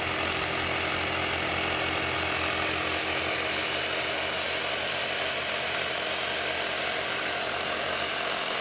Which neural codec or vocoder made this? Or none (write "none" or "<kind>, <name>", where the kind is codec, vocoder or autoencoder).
none